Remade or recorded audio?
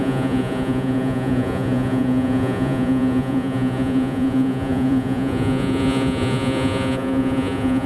remade